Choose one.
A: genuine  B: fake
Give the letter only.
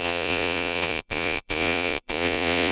B